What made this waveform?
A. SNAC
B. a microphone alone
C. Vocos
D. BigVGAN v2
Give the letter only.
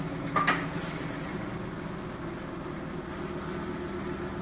B